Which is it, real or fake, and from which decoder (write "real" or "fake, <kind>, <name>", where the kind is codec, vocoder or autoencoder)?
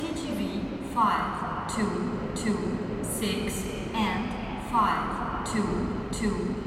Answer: real